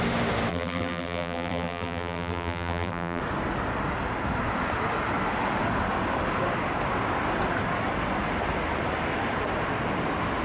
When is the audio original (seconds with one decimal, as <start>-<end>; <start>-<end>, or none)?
0.0-0.5; 3.2-10.4